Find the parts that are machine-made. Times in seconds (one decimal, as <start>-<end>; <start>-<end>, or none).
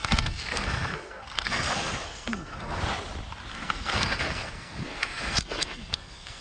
0.0-2.8; 3.5-6.4